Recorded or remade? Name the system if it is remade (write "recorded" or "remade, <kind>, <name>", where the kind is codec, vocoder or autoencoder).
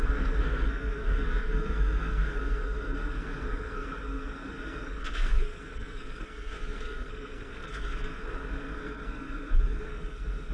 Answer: remade, codec, SNAC